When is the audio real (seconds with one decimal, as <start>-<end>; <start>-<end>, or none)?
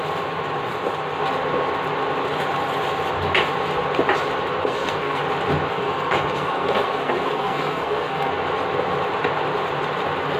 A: 0.0-4.6; 5.2-5.7; 8.3-10.4